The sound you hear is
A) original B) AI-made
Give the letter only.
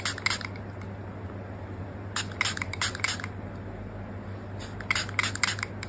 A